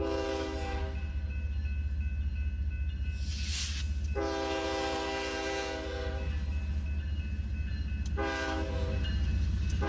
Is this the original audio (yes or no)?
yes